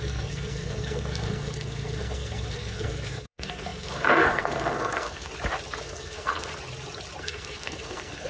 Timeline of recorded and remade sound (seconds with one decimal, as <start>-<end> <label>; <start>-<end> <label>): 0.0-5.3 remade; 5.3-5.8 recorded; 5.8-6.5 remade; 6.5-7.2 recorded; 7.2-8.3 remade